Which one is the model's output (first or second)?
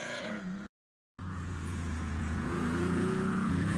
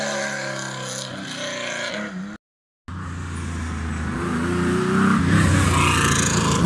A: first